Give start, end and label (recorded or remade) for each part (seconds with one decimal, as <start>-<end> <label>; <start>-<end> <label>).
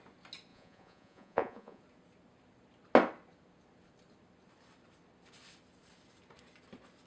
0.0-0.5 recorded; 0.5-1.8 remade; 1.8-7.1 recorded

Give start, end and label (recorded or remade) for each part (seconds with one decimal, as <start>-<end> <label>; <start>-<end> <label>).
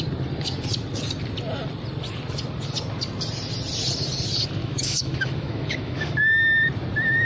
0.0-4.6 recorded; 4.6-6.2 remade; 6.2-7.3 recorded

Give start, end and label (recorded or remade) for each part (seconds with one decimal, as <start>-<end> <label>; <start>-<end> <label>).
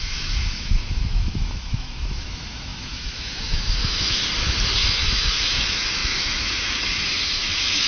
0.0-4.2 remade; 4.2-4.9 recorded; 4.9-7.9 remade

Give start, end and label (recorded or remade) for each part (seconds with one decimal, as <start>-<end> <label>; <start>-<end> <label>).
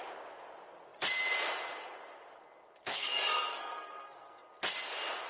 0.0-2.9 recorded; 2.9-4.4 remade; 4.4-5.3 recorded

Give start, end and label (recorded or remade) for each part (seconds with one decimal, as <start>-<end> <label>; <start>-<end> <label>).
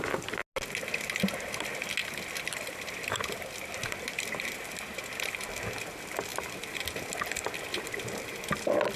0.0-2.0 recorded; 2.0-5.5 remade; 5.5-6.3 recorded; 6.3-7.7 remade; 7.7-9.0 recorded